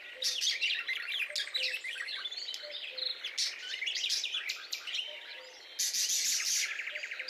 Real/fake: real